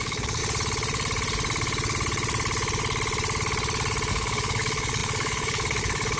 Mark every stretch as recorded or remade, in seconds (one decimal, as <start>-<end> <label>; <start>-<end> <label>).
0.0-0.4 remade; 0.4-4.1 recorded; 4.1-6.2 remade